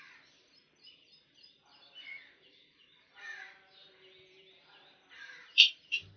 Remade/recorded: remade